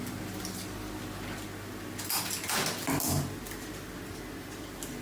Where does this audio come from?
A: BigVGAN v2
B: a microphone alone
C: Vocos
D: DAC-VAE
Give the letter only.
B